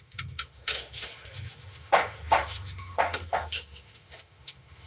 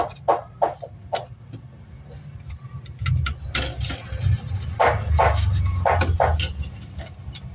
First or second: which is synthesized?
first